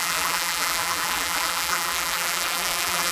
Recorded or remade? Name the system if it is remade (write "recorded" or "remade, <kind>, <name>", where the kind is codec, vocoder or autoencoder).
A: remade, vocoder, BigVGAN v2